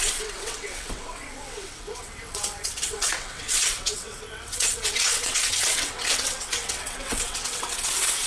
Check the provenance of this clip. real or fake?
fake